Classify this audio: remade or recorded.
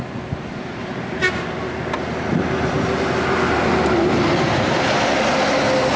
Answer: recorded